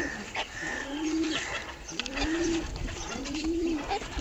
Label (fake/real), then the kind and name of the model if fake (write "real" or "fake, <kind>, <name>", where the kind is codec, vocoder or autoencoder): fake, vocoder, BigVGAN v2